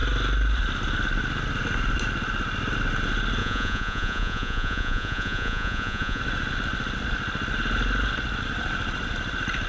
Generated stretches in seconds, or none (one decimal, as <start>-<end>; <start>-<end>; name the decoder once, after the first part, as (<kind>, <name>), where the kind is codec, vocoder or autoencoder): 3.4-6.2 (vocoder, Vocos)

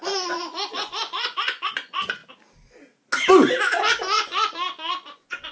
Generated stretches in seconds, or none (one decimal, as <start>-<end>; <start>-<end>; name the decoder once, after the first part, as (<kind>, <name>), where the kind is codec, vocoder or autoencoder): 0.0-2.2 (vocoder, Vocos); 3.9-5.5

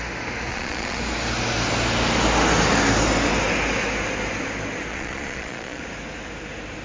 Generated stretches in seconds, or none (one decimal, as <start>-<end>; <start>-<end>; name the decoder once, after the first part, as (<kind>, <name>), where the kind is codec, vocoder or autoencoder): 0.5-1.0 (vocoder, Vocos); 4.9-5.8